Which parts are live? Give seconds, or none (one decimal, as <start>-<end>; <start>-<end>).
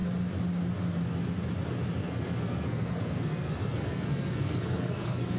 0.0-2.0